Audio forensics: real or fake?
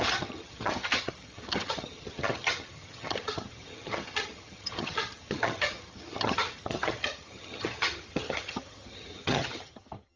fake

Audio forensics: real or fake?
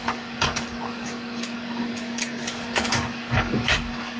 fake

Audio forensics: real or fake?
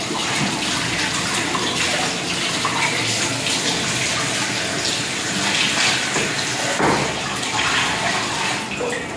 real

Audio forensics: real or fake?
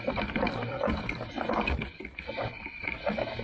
real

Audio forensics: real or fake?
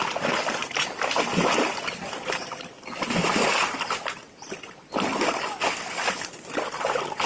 real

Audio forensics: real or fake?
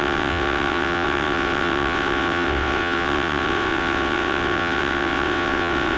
fake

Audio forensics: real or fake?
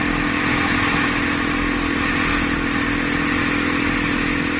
real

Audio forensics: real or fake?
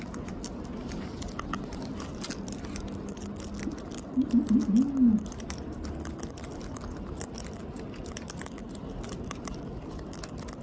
real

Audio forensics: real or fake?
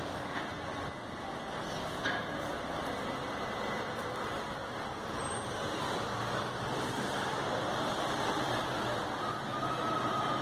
real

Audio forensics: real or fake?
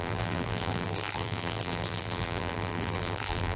fake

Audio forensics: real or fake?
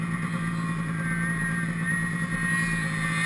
real